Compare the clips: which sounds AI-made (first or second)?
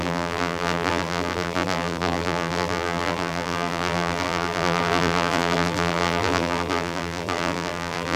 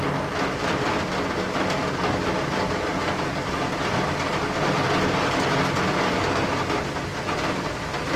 first